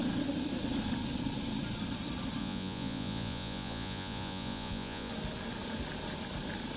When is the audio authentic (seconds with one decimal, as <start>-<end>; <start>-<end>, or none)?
0.0-2.4; 5.1-6.8